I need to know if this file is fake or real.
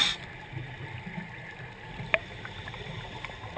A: real